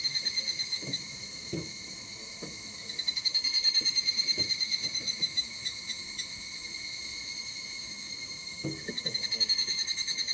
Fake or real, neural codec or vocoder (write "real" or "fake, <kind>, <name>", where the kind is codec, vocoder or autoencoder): fake, autoencoder, DAC-VAE